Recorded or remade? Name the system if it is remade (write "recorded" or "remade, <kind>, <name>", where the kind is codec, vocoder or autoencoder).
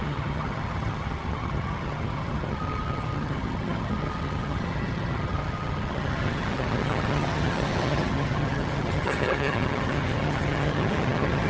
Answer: remade, vocoder, HiFi-GAN